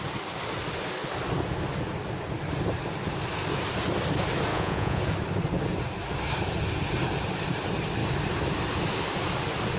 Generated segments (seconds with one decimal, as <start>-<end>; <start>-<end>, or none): 4.5-5.0